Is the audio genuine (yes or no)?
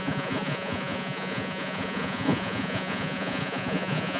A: no